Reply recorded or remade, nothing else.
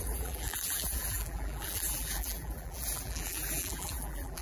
remade